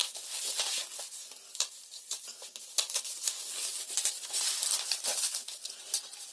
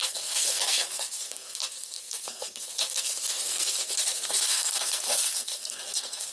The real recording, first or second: first